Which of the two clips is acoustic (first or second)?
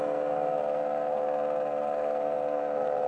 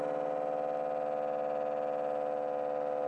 second